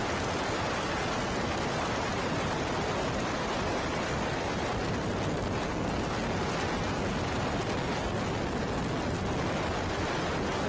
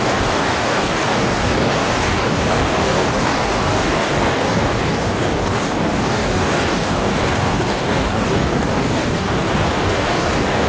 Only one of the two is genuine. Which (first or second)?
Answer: first